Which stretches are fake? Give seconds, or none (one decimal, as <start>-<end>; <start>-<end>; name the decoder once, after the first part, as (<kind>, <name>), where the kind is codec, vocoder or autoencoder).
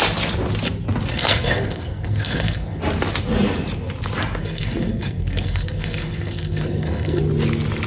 1.1-2.8 (codec, SNAC); 4.4-7.2